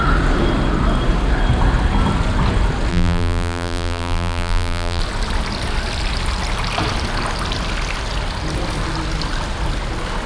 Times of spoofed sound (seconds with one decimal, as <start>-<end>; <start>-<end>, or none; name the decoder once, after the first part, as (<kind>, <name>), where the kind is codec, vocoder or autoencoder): 2.9-5.0 (vocoder, BigVGAN v2)